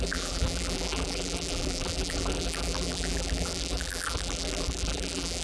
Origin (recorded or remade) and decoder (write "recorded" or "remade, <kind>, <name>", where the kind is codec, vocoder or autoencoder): remade, vocoder, BigVGAN v2